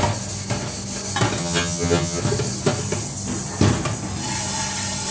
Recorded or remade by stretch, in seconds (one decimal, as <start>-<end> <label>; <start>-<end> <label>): 0.0-1.4 recorded; 1.4-2.2 remade; 2.2-5.1 recorded